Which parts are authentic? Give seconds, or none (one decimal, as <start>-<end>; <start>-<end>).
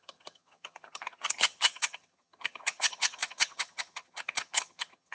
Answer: none